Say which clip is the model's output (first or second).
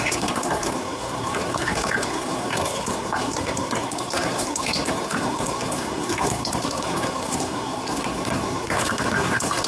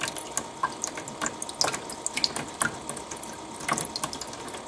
first